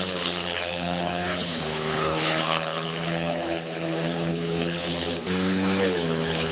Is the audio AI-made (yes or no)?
yes